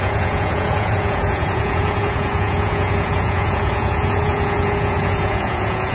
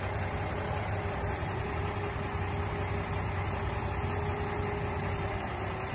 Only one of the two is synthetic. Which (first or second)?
first